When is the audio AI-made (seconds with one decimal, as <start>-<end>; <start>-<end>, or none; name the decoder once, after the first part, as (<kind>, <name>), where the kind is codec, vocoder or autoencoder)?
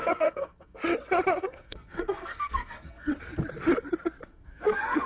0.0-0.8 (codec, SNAC); 1.4-3.1; 4.3-5.1